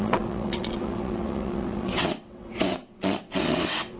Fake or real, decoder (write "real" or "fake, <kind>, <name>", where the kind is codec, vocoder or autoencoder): fake, vocoder, WaveNeXt